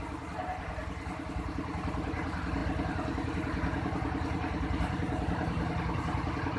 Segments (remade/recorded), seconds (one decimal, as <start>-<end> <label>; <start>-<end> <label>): 0.0-6.6 recorded